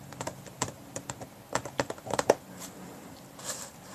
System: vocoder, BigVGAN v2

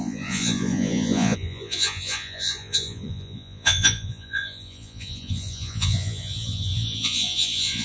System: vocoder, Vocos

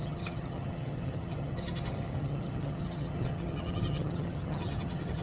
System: vocoder, HiFi-GAN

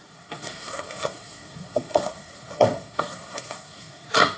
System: codec, SNAC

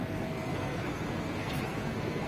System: codec, SNAC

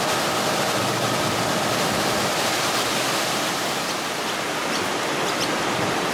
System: none